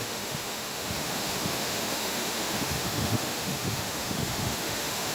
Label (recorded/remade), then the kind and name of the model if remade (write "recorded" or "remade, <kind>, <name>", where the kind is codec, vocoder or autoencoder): remade, autoencoder, DAC-VAE